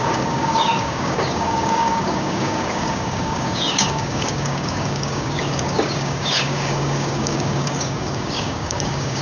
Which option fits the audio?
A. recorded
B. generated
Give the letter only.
B